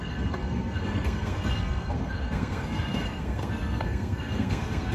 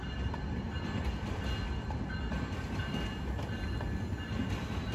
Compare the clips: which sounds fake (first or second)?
first